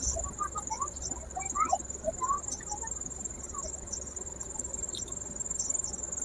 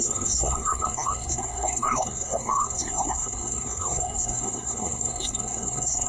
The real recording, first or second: first